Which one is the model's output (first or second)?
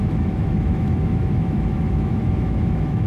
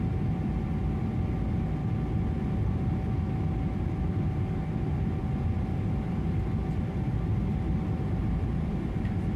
first